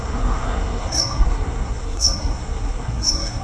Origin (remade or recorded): remade